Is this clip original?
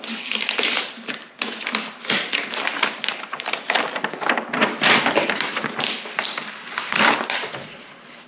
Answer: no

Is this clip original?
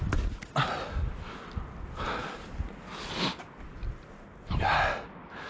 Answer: yes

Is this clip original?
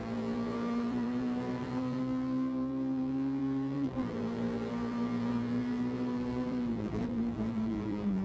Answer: no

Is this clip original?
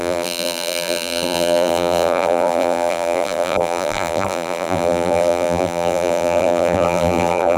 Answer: no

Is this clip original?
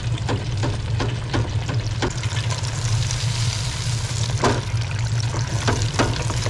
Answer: no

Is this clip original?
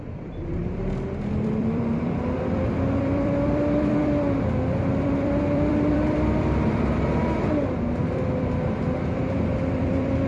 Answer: no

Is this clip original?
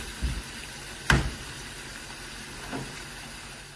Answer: no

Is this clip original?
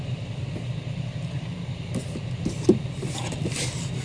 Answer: yes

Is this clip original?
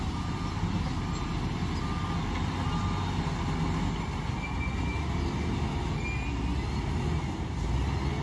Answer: yes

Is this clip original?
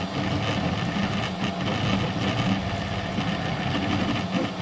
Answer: yes